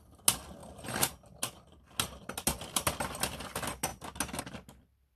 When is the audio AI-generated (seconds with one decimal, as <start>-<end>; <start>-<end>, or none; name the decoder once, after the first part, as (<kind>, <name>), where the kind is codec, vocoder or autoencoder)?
none

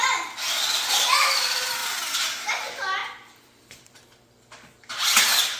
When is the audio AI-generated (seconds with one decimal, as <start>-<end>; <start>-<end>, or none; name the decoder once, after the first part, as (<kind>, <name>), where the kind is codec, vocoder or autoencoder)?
3.0-3.9 (vocoder, BigVGAN v2)

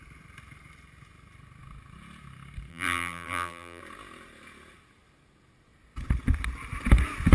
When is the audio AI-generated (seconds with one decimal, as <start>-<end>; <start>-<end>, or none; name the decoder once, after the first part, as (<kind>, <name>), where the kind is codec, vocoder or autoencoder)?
2.7-3.8 (vocoder, BigVGAN v2)

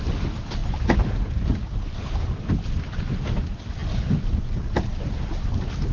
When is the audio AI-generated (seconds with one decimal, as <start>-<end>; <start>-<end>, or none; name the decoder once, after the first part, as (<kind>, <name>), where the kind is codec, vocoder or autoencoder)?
0.6-1.4 (vocoder, BigVGAN v2)

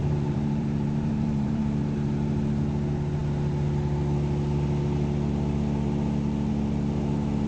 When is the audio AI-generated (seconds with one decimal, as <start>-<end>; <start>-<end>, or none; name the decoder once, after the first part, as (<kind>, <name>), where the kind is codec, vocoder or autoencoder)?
0.0-1.6 (vocoder, BigVGAN v2)

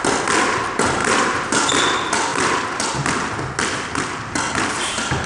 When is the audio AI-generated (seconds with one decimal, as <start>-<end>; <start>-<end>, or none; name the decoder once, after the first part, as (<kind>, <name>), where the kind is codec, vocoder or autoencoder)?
1.0-1.8 (vocoder, BigVGAN v2)